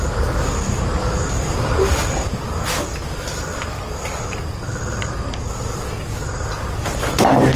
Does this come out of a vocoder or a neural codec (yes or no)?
no